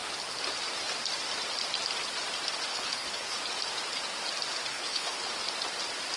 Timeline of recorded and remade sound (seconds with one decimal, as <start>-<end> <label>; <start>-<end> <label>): 0.0-2.7 recorded; 2.7-3.4 remade; 3.4-4.7 recorded; 4.7-5.3 remade; 5.3-6.2 recorded